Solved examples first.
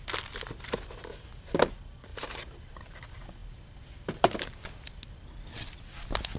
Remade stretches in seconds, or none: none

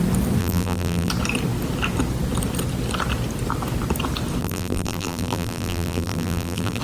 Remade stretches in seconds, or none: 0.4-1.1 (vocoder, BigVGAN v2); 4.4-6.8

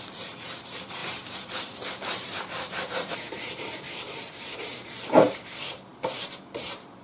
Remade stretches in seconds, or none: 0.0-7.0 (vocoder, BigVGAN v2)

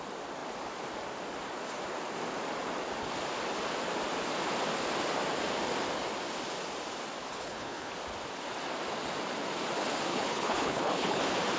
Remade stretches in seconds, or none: 7.3-7.9 (codec, HILCodec); 10.1-11.2

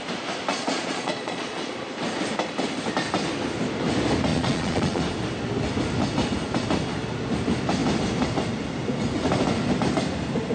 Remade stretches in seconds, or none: 0.5-1.7 (vocoder, Vocos); 4.3-5.0

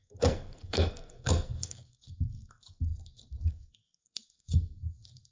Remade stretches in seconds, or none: 0.0-5.3 (codec, SNAC)

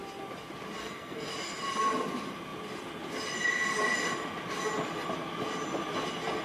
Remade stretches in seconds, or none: 0.8-1.3 (codec, SNAC)

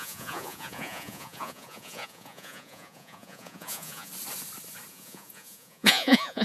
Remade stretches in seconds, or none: 0.0-4.1 (vocoder, Vocos); 4.9-6.4